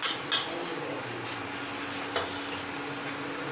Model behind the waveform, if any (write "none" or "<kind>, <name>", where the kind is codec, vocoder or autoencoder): none